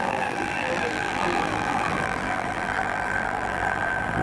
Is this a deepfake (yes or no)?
yes